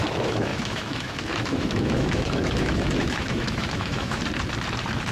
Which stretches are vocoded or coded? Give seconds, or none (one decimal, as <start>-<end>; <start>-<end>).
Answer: 0.0-4.2

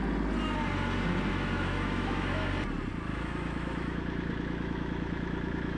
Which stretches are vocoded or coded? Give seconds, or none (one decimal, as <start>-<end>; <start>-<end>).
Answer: 1.3-2.5; 3.1-5.8

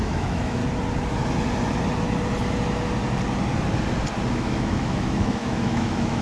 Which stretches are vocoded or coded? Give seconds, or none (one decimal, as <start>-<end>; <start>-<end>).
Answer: 0.0-0.6; 4.3-6.2

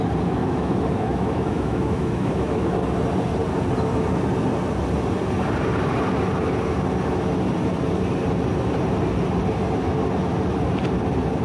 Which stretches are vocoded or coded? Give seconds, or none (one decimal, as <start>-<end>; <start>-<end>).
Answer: 0.4-2.8

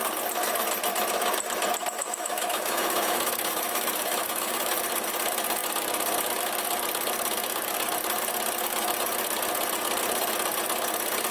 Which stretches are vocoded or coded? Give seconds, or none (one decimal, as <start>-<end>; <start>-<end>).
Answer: 2.0-4.7